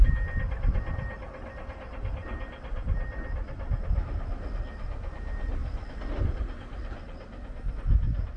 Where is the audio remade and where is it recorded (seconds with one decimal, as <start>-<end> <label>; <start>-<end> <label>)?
0.0-8.4 recorded